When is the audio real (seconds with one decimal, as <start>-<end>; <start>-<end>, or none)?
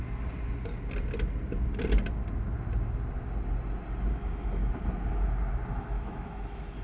0.0-4.1; 4.6-5.7